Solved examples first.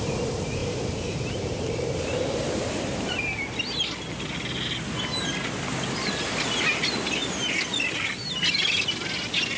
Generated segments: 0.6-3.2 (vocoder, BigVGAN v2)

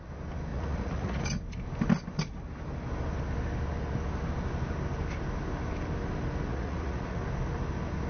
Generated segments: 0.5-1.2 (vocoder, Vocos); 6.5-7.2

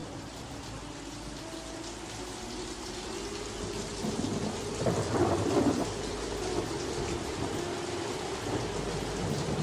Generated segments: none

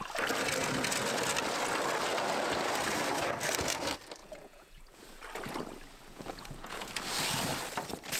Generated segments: 4.2-5.0 (vocoder, Vocos); 6.1-6.9

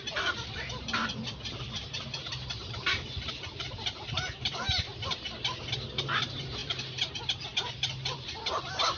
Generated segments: 0.0-1.0 (vocoder, BigVGAN v2); 1.5-4.9; 5.6-9.0

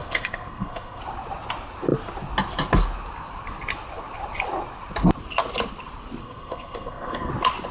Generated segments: 0.0-1.0 (codec, SNAC); 6.2-7.3

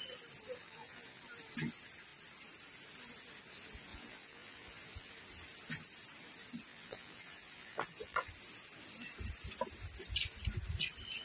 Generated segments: 0.6-1.2 (vocoder, BigVGAN v2); 3.9-5.1; 6.7-8.3

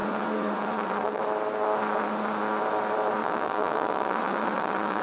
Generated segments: 0.0-1.2 (vocoder, WaveNeXt); 3.2-5.0